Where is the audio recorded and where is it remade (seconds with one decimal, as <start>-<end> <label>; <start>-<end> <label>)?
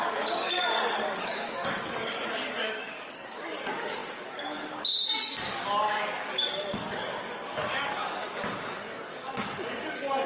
0.0-10.3 remade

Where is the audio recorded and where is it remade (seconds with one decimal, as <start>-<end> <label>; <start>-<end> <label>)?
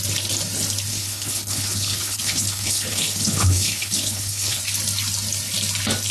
0.0-0.9 recorded; 0.9-4.6 remade; 4.6-6.1 recorded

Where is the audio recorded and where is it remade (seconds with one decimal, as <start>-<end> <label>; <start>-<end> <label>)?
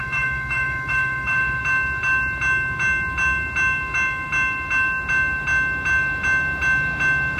0.0-1.6 remade; 1.6-7.4 recorded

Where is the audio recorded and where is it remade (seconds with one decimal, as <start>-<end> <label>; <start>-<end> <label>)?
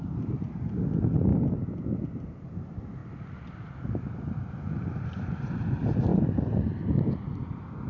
0.0-1.3 remade; 1.3-2.5 recorded; 2.5-6.1 remade; 6.1-7.1 recorded; 7.1-7.9 remade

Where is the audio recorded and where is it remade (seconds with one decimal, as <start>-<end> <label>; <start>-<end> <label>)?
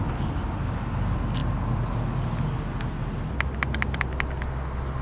0.0-5.0 recorded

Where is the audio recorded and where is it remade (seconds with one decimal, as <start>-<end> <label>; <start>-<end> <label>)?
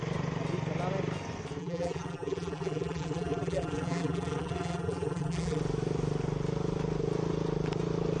0.0-1.6 recorded; 1.6-5.6 remade; 5.6-8.2 recorded